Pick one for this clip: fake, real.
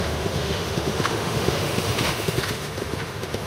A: fake